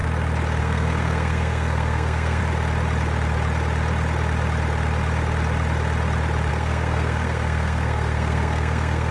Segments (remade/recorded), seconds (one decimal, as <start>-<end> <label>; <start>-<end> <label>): 0.0-0.6 recorded; 0.6-2.4 remade; 2.4-6.5 recorded; 6.5-9.1 remade